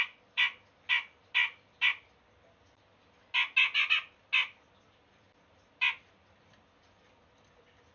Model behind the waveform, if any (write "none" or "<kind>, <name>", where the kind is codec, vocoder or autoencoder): none